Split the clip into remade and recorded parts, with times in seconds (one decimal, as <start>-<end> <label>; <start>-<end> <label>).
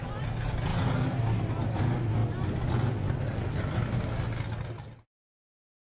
0.0-5.9 recorded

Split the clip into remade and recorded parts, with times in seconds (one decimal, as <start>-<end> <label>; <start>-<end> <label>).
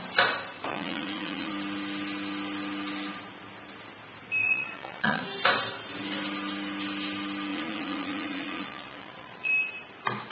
0.0-0.7 recorded; 0.7-1.5 remade; 1.5-4.4 recorded; 4.4-5.2 remade; 5.2-7.5 recorded; 7.5-9.5 remade; 9.5-10.3 recorded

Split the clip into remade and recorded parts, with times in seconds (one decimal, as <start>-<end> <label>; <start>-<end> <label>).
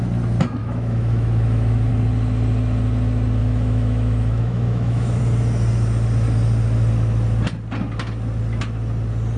0.0-0.6 recorded; 0.6-1.9 remade; 1.9-3.4 recorded; 3.4-5.2 remade; 5.2-9.4 recorded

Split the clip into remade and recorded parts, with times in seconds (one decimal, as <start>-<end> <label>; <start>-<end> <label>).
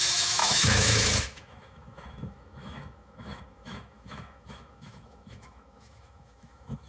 0.0-6.9 remade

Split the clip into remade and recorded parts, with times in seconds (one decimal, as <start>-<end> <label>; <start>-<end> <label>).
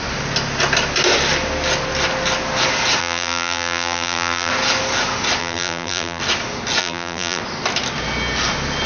0.0-3.0 recorded; 3.0-4.5 remade; 4.5-5.4 recorded; 5.4-6.2 remade; 6.2-6.8 recorded; 6.8-7.4 remade; 7.4-8.9 recorded